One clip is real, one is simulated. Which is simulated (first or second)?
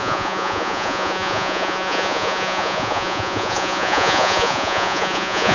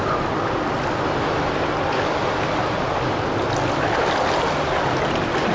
first